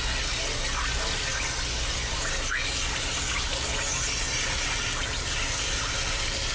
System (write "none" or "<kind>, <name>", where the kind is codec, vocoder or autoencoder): none